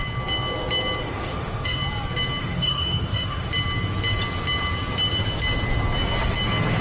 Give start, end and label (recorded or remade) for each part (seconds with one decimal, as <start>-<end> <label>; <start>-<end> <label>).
0.0-1.0 recorded; 1.0-1.8 remade; 1.8-2.4 recorded; 2.4-3.5 remade; 3.5-6.8 recorded